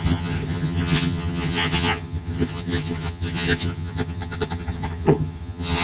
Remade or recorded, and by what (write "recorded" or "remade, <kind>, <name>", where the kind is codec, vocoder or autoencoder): remade, vocoder, HiFi-GAN